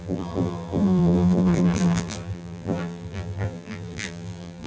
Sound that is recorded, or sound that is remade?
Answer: remade